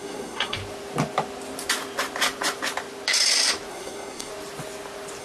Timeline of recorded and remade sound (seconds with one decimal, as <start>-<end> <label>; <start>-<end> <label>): 0.0-0.6 remade; 0.6-3.7 recorded; 3.7-4.3 remade; 4.3-5.2 recorded